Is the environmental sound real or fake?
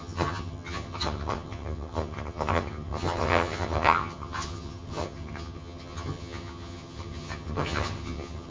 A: fake